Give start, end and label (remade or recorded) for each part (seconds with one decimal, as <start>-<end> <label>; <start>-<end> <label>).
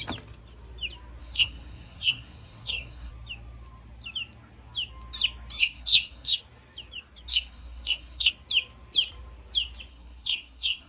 0.0-1.2 recorded; 1.2-3.1 remade; 3.1-5.6 recorded; 5.6-6.4 remade; 6.4-7.3 recorded; 7.3-8.3 remade; 8.3-9.9 recorded; 9.9-10.9 remade